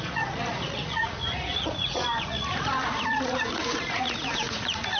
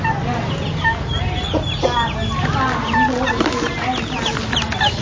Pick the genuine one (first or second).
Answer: second